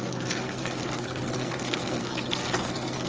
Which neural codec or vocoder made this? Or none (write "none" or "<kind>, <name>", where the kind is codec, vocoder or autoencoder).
codec, SNAC